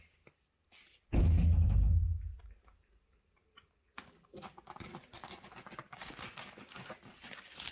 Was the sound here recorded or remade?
recorded